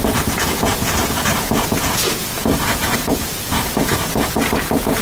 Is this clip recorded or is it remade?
remade